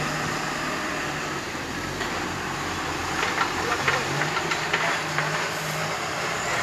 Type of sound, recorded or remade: recorded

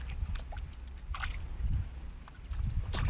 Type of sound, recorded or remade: recorded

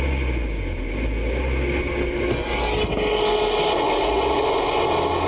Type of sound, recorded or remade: recorded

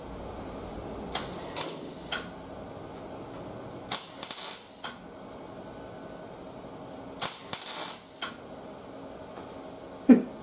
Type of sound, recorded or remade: recorded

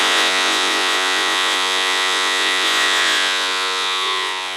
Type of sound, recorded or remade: remade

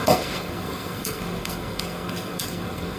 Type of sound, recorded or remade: remade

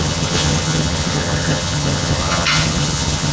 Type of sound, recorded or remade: remade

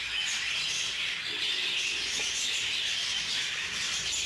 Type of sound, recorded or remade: recorded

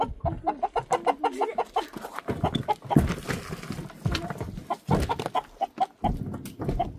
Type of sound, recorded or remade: recorded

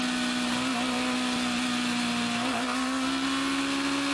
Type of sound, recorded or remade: recorded